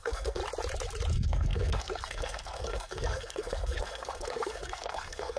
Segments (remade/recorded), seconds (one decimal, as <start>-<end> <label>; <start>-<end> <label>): 0.0-0.4 remade; 0.4-1.1 recorded; 1.1-5.4 remade